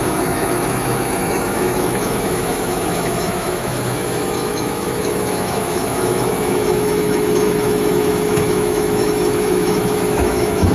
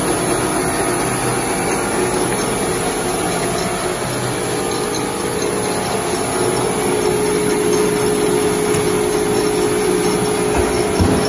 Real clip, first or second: second